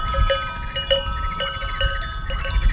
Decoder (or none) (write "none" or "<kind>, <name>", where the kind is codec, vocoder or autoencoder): none